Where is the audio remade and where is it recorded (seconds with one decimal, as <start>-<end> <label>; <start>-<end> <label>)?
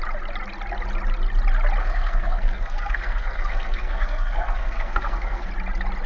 0.0-1.8 recorded; 1.8-5.5 remade; 5.5-6.1 recorded